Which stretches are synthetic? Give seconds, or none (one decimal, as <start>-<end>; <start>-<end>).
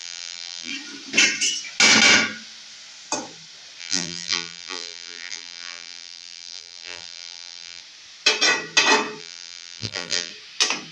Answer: 0.0-0.7; 3.8-7.8; 9.2-10.3